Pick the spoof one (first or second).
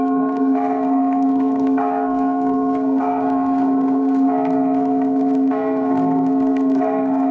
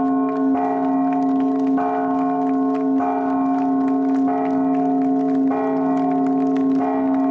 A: first